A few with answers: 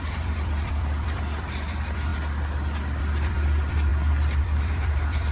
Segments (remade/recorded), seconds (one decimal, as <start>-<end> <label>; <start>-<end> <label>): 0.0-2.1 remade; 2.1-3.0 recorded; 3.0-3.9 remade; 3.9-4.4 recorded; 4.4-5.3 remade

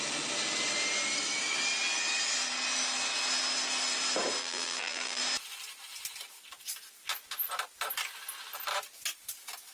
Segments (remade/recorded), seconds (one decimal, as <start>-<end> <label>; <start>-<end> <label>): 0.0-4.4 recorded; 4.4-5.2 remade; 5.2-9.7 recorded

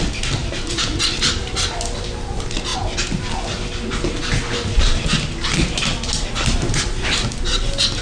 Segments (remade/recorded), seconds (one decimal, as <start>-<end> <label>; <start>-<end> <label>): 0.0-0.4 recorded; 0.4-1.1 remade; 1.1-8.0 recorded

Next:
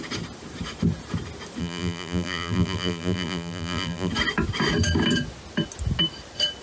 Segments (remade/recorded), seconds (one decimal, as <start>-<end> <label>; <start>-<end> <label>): 0.0-1.6 recorded; 1.6-4.1 remade; 4.1-6.6 recorded

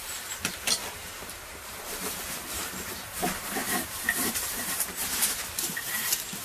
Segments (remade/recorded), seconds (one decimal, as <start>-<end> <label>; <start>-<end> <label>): 0.0-6.4 remade

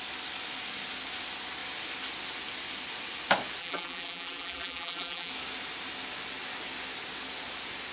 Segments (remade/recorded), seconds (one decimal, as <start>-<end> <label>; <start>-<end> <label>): 0.0-3.6 recorded; 3.6-5.3 remade; 5.3-7.9 recorded

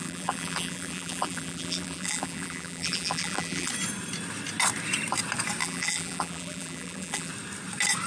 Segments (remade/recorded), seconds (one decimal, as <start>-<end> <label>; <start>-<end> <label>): 0.0-3.7 remade; 3.7-5.6 recorded; 5.6-7.3 remade; 7.3-8.1 recorded

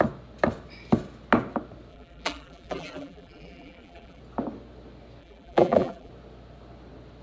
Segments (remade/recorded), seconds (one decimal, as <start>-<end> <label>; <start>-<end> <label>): 0.0-1.9 recorded; 1.9-4.2 remade; 4.2-5.2 recorded; 5.2-6.1 remade; 6.1-7.2 recorded